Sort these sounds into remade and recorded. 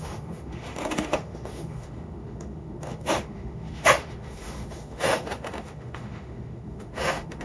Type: remade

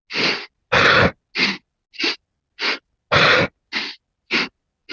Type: recorded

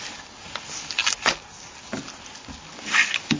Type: recorded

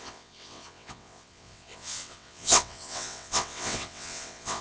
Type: remade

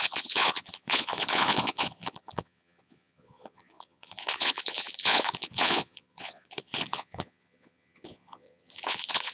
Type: remade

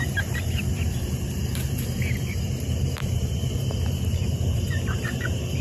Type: remade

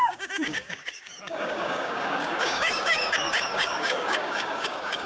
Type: remade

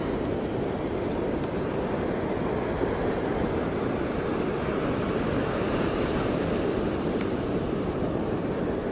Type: recorded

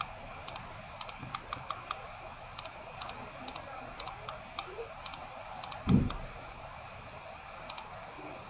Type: recorded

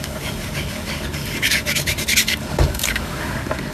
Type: remade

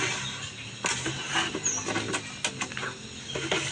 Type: recorded